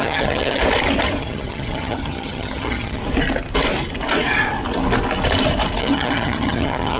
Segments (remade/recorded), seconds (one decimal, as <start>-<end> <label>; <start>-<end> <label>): 0.0-0.6 remade; 0.6-1.2 recorded; 1.2-3.0 remade; 3.0-5.8 recorded; 5.8-7.0 remade